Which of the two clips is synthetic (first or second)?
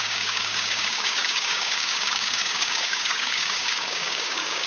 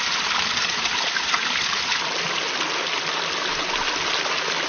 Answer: first